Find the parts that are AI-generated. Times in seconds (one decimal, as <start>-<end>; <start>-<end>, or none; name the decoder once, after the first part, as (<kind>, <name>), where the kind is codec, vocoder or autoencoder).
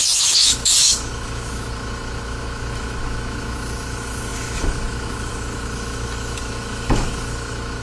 0.0-7.8 (autoencoder, DAC-VAE)